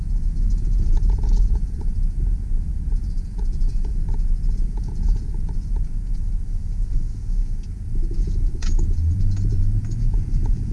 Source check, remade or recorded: remade